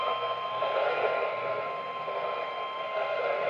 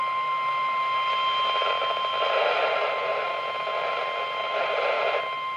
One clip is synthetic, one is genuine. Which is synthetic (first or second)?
first